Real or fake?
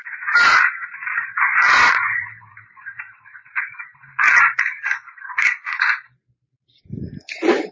fake